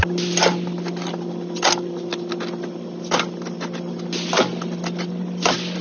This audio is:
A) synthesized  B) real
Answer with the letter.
B